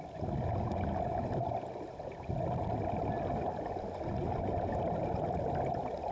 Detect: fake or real real